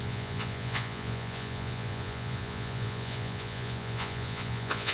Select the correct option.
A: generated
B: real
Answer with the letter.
A